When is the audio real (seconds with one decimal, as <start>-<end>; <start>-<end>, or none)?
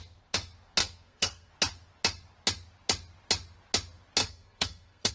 0.0-0.8; 1.5-4.2